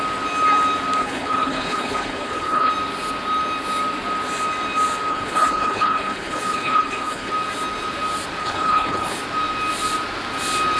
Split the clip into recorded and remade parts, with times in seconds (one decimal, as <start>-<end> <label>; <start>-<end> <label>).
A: 0.0-1.0 recorded; 1.0-2.7 remade; 2.7-5.1 recorded; 5.1-7.3 remade; 7.3-8.4 recorded; 8.4-9.2 remade; 9.2-10.8 recorded